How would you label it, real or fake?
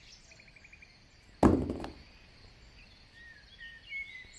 real